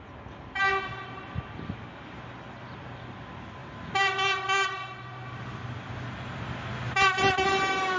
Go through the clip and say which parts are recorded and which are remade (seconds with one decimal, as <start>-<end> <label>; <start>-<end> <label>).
0.0-8.0 recorded